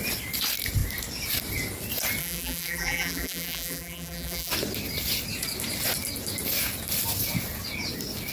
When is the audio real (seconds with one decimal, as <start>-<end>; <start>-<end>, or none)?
0.0-2.2; 4.5-8.3